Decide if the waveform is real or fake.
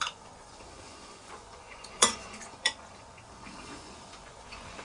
fake